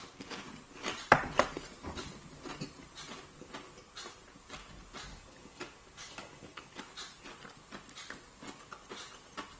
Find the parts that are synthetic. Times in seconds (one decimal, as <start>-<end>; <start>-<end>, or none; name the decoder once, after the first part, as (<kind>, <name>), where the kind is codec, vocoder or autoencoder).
5.1-6.8 (codec, DAC)